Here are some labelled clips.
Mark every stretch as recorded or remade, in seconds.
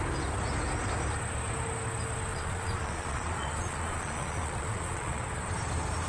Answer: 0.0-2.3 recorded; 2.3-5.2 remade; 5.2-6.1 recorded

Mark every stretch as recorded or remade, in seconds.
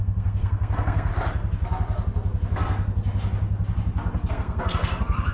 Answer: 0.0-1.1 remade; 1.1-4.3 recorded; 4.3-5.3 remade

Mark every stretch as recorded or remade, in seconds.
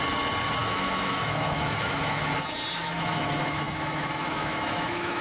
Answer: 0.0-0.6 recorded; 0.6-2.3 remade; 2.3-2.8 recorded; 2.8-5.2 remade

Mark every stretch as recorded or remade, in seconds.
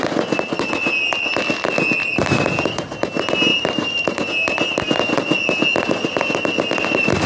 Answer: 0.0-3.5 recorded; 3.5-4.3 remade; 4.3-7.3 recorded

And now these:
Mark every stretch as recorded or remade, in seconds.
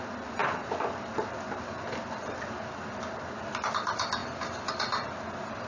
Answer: 0.0-0.4 recorded; 0.4-3.8 remade; 3.8-4.2 recorded; 4.2-4.7 remade; 4.7-5.7 recorded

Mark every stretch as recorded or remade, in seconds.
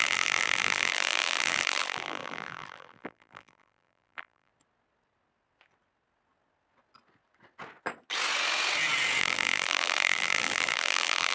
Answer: 0.0-4.5 remade; 4.5-9.2 recorded; 9.2-11.3 remade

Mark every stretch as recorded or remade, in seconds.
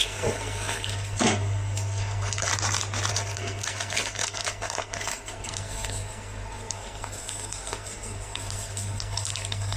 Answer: 0.0-2.5 remade; 2.5-3.1 recorded; 3.1-9.8 remade